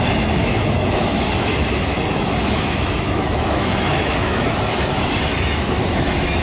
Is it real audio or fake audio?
fake